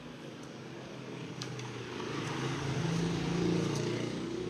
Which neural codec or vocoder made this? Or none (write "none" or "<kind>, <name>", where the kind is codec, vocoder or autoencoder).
codec, DAC